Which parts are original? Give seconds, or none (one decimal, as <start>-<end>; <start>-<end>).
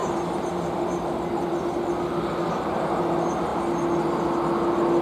0.0-5.0